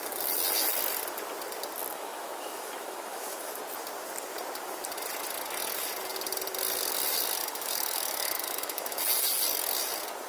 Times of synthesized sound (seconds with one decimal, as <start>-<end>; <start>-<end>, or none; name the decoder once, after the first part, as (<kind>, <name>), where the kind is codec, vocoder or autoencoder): 1.9-3.6 (autoencoder, DAC-VAE); 7.4-9.0